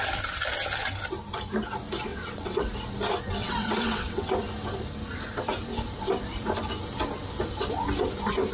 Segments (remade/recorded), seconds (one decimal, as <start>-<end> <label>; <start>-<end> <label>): 0.0-2.1 recorded; 2.1-2.7 remade; 2.7-3.4 recorded; 3.4-4.3 remade; 4.3-8.5 recorded